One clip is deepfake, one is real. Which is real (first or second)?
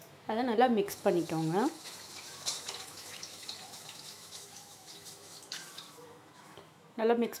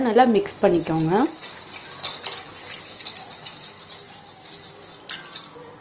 second